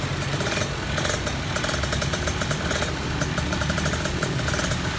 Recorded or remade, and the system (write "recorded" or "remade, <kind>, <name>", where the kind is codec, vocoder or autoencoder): recorded